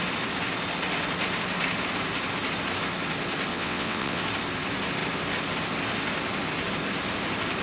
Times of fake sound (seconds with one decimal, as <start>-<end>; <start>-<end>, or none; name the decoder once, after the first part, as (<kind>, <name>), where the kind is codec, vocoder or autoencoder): 3.5-4.2 (vocoder, WaveNeXt)